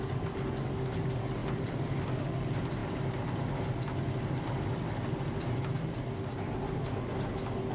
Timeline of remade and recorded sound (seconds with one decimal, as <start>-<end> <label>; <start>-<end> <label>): 0.0-1.4 recorded; 1.4-2.2 remade; 2.2-7.7 recorded